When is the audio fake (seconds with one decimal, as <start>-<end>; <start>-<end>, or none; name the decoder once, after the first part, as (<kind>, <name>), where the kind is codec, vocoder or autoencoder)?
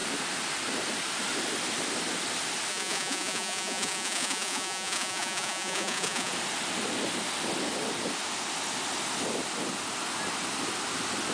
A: 2.7-6.3 (vocoder, Vocos)